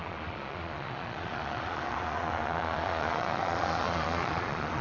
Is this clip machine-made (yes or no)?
yes